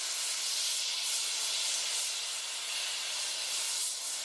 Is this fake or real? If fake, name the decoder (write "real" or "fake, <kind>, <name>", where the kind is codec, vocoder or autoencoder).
real